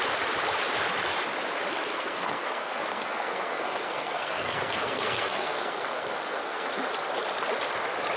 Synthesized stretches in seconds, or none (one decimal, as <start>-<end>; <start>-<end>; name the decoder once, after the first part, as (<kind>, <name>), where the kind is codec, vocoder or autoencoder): 1.9-6.8 (codec, SNAC)